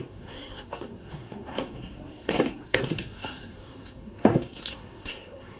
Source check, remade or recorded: remade